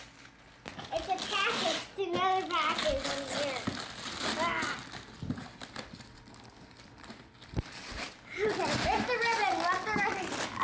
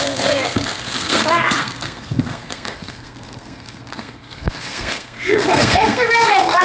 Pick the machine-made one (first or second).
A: second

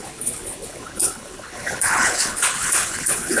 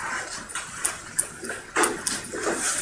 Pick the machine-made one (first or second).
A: first